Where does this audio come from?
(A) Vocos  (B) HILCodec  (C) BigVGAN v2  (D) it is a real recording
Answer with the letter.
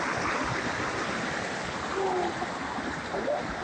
D